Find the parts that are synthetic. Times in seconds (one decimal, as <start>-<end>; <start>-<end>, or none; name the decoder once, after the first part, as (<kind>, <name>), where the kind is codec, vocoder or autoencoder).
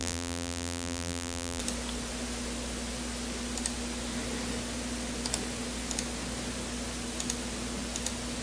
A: 0.0-1.6 (vocoder, BigVGAN v2)